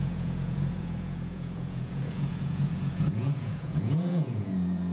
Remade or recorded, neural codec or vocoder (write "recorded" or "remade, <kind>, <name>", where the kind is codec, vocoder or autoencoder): remade, vocoder, Vocos